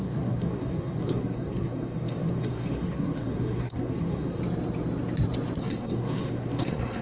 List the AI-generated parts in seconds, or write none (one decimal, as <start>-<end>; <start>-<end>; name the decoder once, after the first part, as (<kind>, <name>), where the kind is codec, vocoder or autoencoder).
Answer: 0.0-4.4 (codec, SNAC); 5.6-7.0